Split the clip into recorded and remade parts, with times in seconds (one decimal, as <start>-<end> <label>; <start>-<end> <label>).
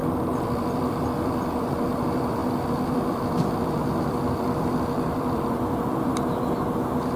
0.0-0.6 recorded; 0.6-6.1 remade; 6.1-7.2 recorded